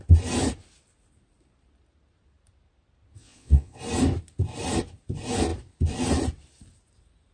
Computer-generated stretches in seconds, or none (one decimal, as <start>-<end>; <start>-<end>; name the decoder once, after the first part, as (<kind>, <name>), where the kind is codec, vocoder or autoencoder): 3.2-3.8 (vocoder, Vocos)